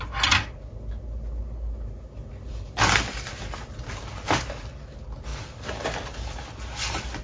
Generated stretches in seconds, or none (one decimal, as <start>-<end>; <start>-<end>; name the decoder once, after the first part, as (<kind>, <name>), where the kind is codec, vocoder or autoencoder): none